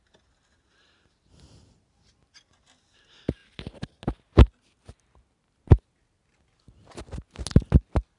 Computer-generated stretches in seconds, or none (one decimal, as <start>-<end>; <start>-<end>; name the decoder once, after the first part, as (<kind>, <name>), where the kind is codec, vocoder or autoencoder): none